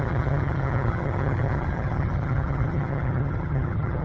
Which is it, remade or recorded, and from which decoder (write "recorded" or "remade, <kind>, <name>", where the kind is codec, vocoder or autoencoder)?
remade, vocoder, HiFi-GAN